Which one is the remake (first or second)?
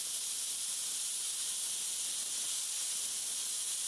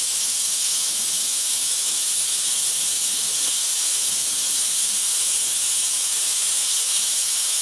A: second